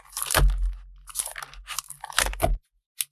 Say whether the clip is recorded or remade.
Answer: recorded